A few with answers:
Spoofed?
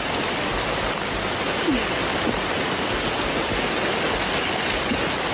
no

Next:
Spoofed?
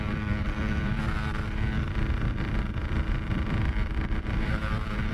yes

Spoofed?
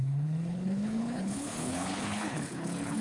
yes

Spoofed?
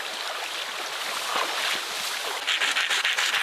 no